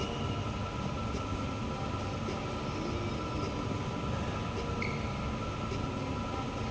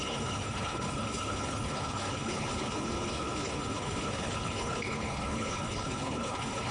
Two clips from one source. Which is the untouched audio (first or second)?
first